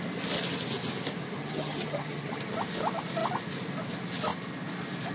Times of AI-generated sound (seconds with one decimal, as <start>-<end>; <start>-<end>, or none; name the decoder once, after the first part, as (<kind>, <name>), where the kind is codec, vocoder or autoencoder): 1.4-2.4 (vocoder, HiFi-GAN)